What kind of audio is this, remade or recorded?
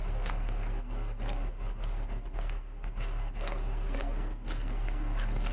remade